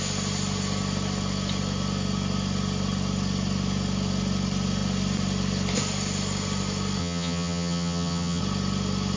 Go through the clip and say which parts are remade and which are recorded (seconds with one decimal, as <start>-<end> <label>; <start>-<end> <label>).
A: 0.0-7.0 recorded; 7.0-8.4 remade; 8.4-9.2 recorded